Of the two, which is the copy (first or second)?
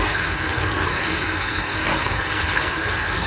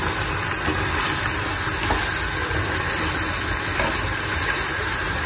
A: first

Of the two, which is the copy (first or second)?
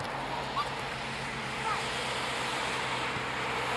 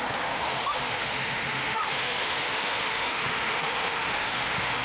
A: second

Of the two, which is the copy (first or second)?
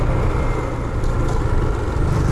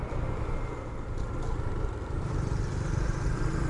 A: second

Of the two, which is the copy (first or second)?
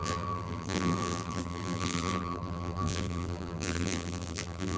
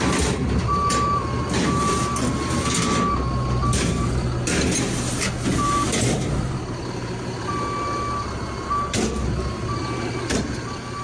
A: first